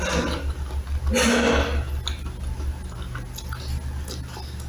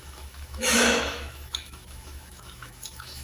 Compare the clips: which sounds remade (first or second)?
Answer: second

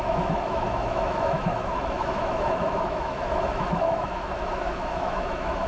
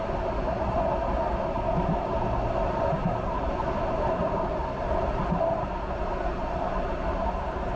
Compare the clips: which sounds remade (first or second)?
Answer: first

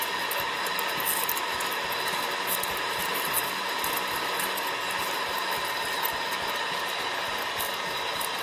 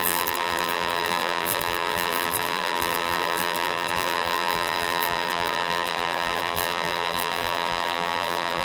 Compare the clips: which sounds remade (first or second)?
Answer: second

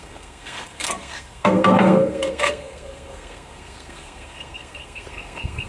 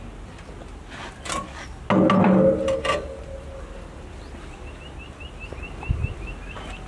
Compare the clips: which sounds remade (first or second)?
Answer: first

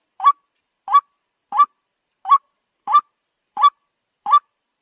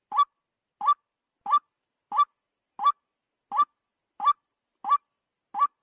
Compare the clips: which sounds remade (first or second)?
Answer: first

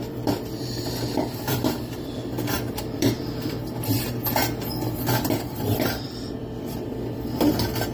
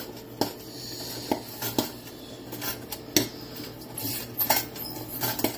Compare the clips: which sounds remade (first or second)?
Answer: first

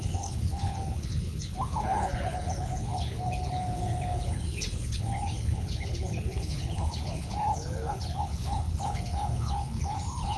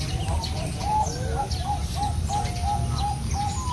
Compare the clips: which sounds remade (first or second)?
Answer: first